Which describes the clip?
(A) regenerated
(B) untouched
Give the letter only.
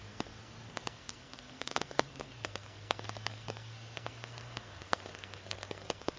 A